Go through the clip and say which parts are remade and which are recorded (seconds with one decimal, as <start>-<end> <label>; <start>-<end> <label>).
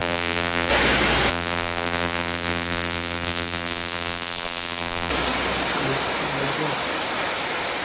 0.0-0.7 remade; 0.7-1.3 recorded; 1.3-5.1 remade; 5.1-7.8 recorded